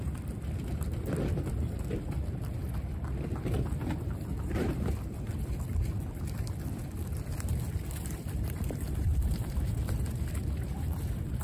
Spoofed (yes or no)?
yes